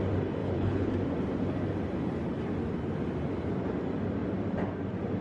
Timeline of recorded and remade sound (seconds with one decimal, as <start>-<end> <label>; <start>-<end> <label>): 0.0-0.4 recorded; 0.4-0.9 remade; 0.9-5.2 recorded